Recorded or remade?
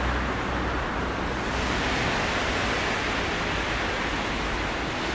recorded